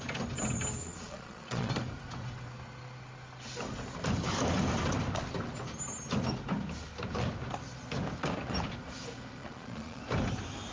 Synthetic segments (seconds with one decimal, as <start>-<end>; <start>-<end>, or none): 0.8-1.7; 9.4-10.0